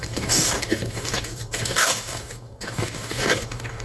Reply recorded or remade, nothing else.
remade